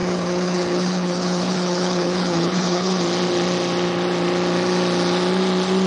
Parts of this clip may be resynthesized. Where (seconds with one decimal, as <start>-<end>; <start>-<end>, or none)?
0.0-3.0